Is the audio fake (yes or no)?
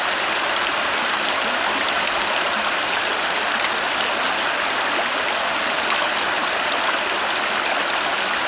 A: no